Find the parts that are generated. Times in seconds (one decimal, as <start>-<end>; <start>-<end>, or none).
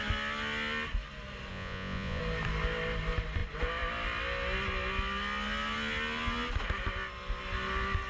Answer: 1.5-2.2